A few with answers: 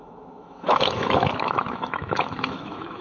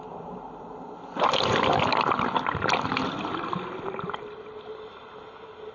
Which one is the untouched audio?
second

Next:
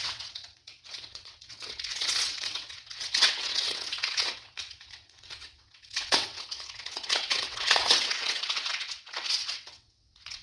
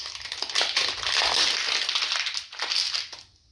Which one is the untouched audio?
second